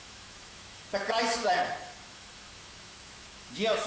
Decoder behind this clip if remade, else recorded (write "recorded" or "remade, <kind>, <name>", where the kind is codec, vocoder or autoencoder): remade, autoencoder, DAC-VAE